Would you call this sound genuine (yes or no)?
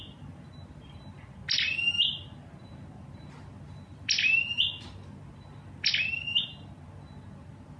yes